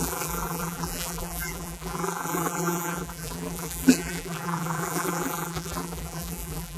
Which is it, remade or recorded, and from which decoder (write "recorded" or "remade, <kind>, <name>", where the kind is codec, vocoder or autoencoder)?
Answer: remade, vocoder, BigVGAN v2